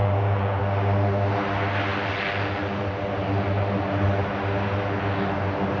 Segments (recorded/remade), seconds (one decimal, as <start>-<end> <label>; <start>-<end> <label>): 0.0-0.6 remade; 0.6-5.8 recorded